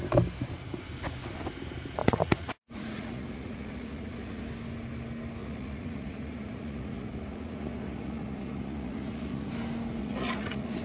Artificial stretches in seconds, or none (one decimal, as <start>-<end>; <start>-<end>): 2.0-4.4; 5.4-9.5; 10.0-10.8